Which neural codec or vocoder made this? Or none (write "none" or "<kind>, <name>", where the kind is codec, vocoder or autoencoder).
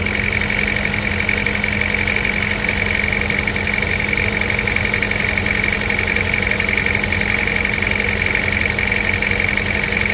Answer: none